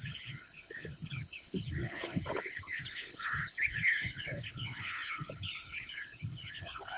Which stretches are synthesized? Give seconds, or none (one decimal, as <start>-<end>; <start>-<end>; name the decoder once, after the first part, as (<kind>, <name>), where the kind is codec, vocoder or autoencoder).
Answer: 0.0-7.0 (codec, HILCodec)